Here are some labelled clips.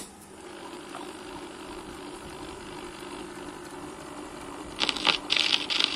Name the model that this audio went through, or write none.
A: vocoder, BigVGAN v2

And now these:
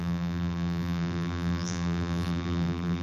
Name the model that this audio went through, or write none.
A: vocoder, BigVGAN v2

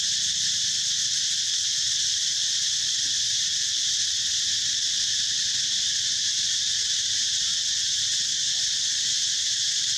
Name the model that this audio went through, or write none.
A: vocoder, BigVGAN v2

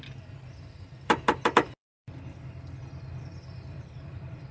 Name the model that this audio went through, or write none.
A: vocoder, BigVGAN v2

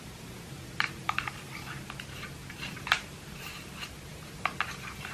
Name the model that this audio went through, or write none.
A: vocoder, BigVGAN v2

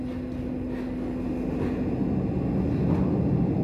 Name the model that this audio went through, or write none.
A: none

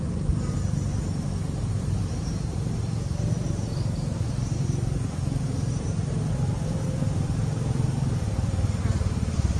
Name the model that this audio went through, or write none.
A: vocoder, BigVGAN v2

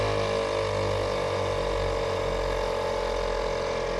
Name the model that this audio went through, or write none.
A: none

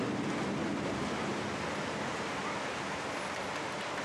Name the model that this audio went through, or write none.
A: vocoder, BigVGAN v2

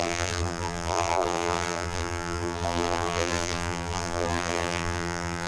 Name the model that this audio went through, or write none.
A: vocoder, BigVGAN v2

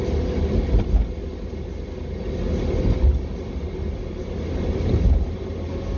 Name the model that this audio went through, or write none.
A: none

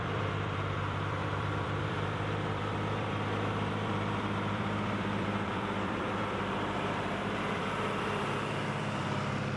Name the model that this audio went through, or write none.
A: vocoder, BigVGAN v2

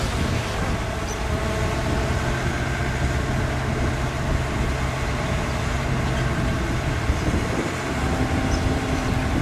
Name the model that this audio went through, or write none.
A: none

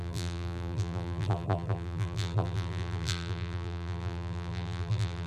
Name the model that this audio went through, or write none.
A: vocoder, BigVGAN v2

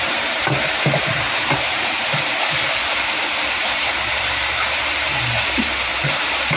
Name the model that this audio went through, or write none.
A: vocoder, BigVGAN v2